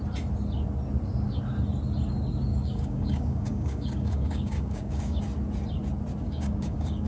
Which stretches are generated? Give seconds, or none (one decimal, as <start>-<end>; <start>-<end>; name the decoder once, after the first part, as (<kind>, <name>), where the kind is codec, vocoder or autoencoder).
2.5-5.2 (codec, DAC); 6.2-7.1